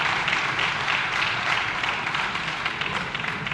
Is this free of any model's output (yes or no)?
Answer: yes